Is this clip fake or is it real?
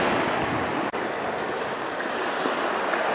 real